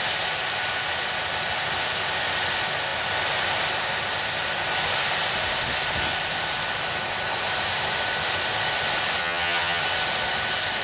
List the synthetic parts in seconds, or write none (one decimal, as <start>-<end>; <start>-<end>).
9.2-9.8